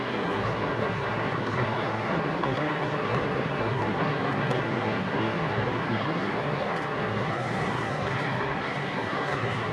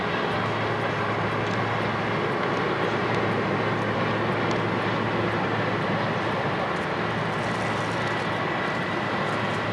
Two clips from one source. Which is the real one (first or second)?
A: second